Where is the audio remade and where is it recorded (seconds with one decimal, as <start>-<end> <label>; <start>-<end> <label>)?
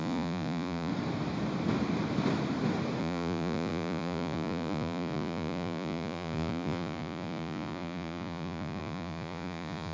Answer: 0.0-0.9 remade; 0.9-3.0 recorded; 3.0-9.9 remade